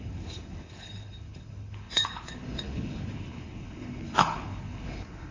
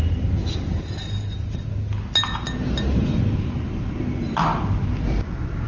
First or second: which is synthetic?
first